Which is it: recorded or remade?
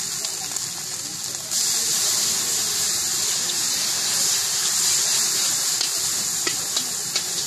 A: recorded